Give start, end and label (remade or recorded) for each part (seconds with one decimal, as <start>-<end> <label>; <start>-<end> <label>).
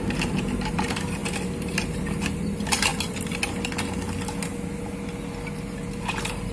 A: 0.0-1.2 remade; 1.2-1.7 recorded; 1.7-2.9 remade; 2.9-6.1 recorded; 6.1-6.5 remade